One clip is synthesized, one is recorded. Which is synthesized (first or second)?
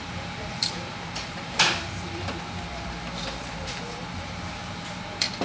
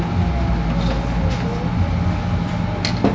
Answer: first